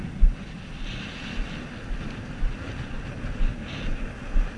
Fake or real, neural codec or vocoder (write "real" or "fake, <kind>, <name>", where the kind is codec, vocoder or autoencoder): real